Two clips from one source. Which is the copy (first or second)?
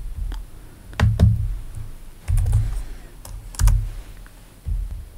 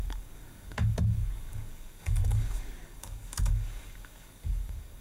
second